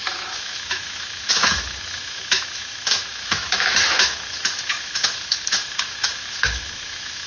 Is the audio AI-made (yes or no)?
yes